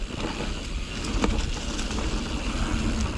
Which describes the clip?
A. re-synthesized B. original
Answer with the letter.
B